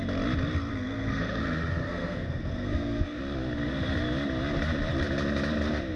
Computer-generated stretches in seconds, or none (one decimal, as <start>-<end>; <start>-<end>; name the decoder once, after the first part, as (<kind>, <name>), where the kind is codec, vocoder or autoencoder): 0.7-1.4 (codec, SNAC); 1.8-3.2